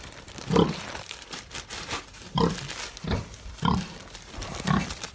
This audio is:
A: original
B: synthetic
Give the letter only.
B